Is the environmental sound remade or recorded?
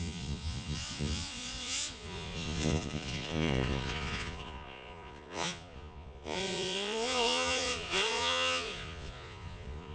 remade